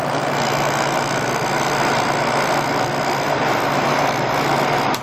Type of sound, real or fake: real